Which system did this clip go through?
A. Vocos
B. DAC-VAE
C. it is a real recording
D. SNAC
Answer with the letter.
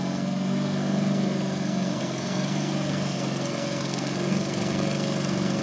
D